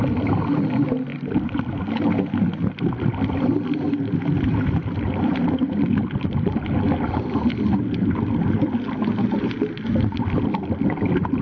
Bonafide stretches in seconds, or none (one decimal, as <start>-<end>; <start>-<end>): 0.0-11.4